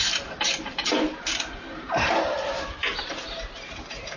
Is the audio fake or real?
fake